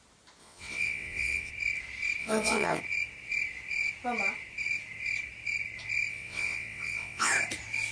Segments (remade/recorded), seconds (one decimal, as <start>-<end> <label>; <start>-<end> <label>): 0.0-0.4 recorded; 0.4-1.5 remade; 1.5-2.2 recorded; 2.2-2.8 remade; 2.8-6.1 recorded; 6.1-7.3 remade; 7.3-7.9 recorded